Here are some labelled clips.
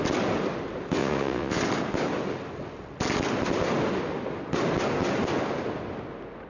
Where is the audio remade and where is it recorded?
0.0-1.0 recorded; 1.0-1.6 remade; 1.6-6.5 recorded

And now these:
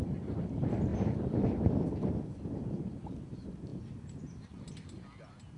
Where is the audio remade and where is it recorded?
0.0-0.9 recorded; 0.9-1.8 remade; 1.8-2.3 recorded; 2.3-3.1 remade; 3.1-3.7 recorded; 3.7-4.2 remade; 4.2-5.6 recorded

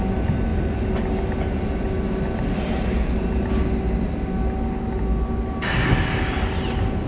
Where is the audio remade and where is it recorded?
0.0-7.1 recorded